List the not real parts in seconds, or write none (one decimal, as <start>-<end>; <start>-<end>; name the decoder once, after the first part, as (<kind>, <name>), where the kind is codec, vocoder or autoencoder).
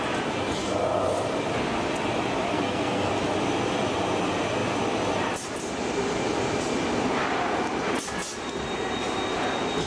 2.5-3.1 (codec, SNAC)